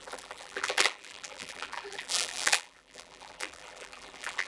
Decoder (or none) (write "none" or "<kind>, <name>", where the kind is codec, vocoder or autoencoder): vocoder, BigVGAN v2